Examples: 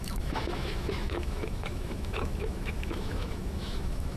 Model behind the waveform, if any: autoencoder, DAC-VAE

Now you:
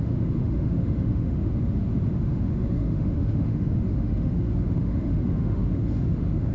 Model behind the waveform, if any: autoencoder, DAC-VAE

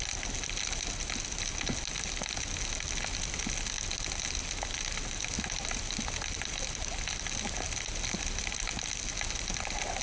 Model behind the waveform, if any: none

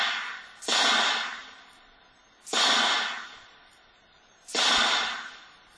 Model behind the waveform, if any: none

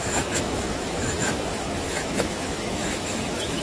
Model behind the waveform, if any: autoencoder, DAC-VAE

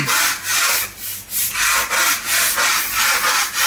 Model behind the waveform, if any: none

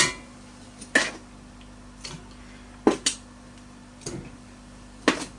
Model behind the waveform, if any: none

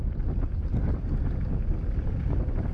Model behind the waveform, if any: none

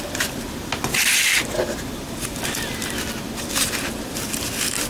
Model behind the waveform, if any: none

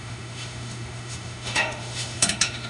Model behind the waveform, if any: autoencoder, DAC-VAE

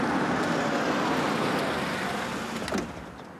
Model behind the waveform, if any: none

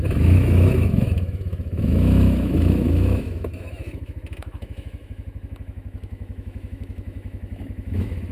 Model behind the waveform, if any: autoencoder, DAC-VAE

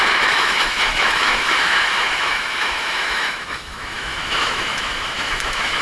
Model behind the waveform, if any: autoencoder, DAC-VAE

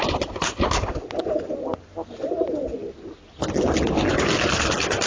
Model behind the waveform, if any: none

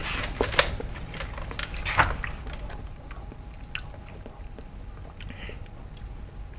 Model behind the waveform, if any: none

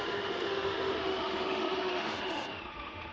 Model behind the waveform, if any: autoencoder, DAC-VAE